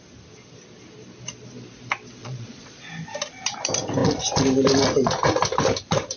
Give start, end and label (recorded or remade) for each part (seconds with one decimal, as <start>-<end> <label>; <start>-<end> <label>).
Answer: 0.0-2.2 recorded; 2.2-2.8 remade; 2.8-6.2 recorded